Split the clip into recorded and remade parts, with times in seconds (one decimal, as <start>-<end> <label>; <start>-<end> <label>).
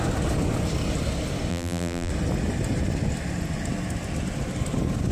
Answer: 0.0-1.5 recorded; 1.5-2.1 remade; 2.1-5.1 recorded